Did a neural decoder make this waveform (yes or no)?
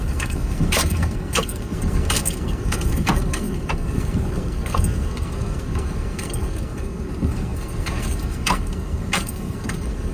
yes